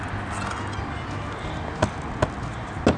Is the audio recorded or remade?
recorded